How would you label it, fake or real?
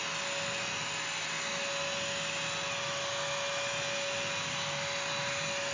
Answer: real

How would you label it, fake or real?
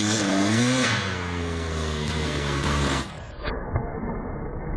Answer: fake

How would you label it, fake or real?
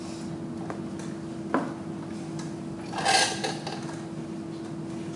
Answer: real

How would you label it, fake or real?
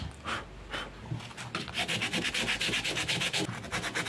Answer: real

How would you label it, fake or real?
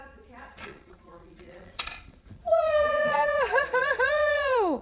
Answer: fake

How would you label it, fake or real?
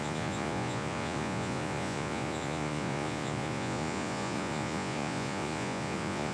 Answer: fake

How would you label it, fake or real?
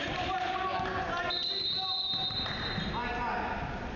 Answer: real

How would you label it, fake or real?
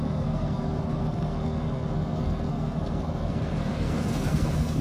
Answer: fake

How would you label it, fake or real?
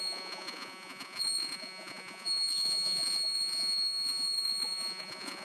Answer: fake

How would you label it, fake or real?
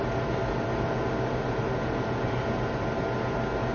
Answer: real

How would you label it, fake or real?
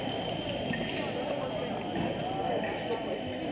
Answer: real